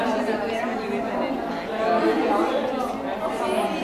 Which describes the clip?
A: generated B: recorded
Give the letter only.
B